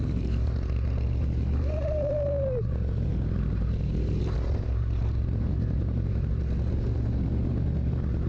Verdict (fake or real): real